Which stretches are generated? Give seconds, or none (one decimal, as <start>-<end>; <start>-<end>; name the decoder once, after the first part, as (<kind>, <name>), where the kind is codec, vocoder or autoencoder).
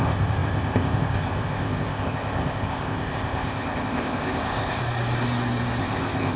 0.0-4.8 (codec, ZipCodec); 5.8-6.4